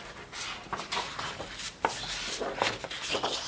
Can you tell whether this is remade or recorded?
recorded